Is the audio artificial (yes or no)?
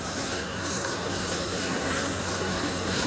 yes